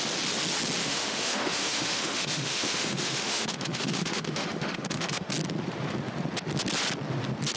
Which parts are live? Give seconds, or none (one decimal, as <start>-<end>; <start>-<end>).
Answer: 0.0-0.8; 5.3-7.6